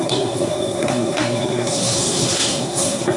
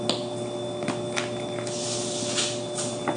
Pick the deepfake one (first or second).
first